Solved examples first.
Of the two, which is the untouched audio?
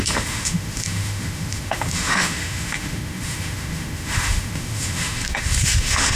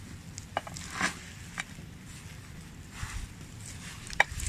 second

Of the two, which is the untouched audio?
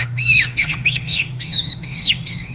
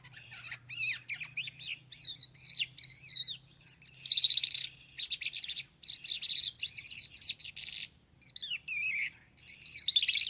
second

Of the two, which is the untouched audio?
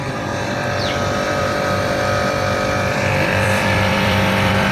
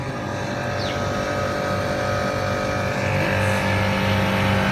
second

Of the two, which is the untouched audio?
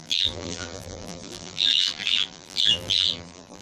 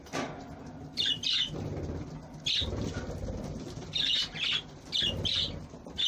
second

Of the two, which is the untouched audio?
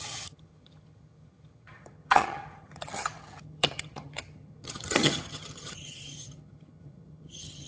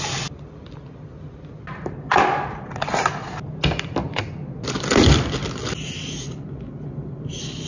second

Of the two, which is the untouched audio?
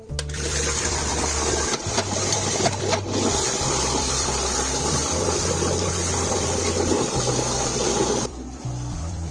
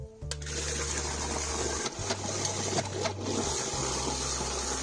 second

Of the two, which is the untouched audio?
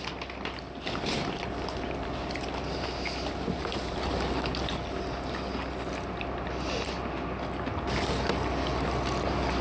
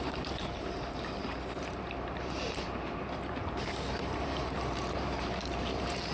first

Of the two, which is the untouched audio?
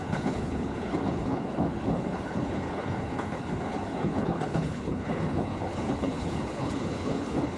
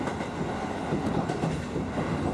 second